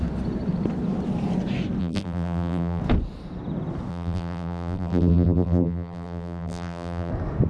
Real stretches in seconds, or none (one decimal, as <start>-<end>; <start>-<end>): 0.0-1.8; 2.8-3.9; 7.1-7.5